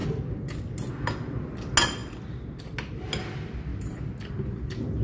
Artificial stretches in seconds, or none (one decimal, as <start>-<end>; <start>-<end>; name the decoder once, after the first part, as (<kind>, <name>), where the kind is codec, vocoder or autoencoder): 3.7-4.3 (vocoder, BigVGAN v2)

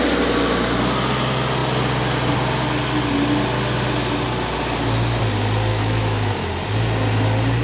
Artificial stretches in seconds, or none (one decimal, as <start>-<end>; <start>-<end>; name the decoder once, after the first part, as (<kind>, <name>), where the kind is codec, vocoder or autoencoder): 5.7-6.5 (autoencoder, DAC-VAE)

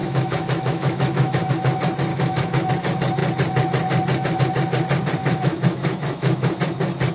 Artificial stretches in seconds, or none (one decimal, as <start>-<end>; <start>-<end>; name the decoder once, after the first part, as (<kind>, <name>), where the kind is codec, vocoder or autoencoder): 0.0-1.5 (autoencoder, DAC-VAE); 2.1-2.7; 5.2-6.6

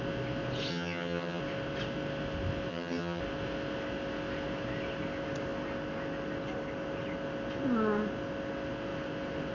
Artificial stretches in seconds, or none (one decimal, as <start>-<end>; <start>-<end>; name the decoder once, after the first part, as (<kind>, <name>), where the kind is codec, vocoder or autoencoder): 0.7-1.4 (vocoder, HiFi-GAN); 2.7-3.2